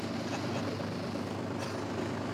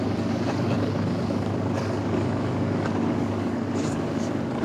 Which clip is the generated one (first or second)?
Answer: second